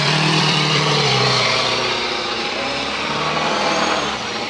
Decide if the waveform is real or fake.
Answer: fake